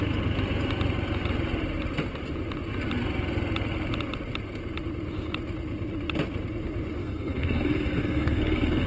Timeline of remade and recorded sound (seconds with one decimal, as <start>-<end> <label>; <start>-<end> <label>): 0.0-7.0 recorded; 7.0-8.9 remade